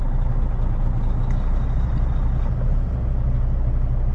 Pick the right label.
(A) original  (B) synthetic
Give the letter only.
A